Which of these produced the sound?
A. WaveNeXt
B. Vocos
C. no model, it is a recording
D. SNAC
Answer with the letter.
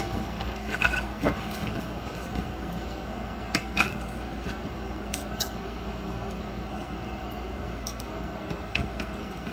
D